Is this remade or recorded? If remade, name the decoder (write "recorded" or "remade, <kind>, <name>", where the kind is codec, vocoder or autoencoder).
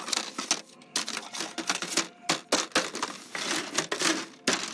recorded